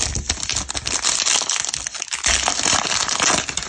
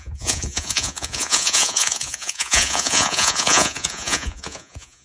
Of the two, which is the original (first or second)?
first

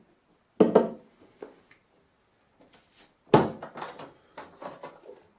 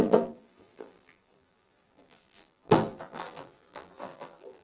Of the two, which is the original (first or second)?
first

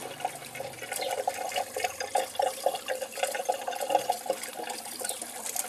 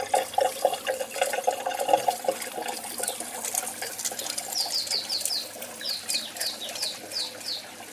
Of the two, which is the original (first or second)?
second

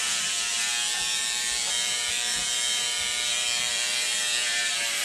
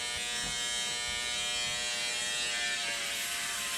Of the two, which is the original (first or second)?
second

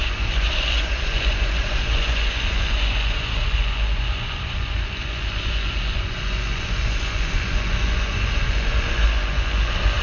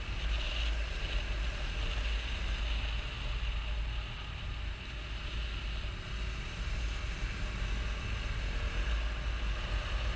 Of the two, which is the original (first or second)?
second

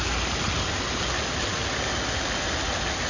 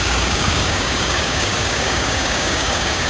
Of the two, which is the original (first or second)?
first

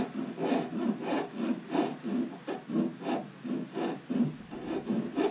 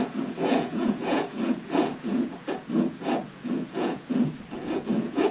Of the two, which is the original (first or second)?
first